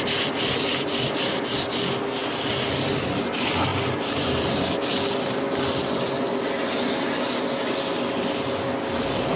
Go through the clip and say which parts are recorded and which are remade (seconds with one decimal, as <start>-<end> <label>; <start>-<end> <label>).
0.0-9.4 recorded